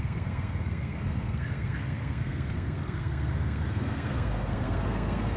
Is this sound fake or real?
fake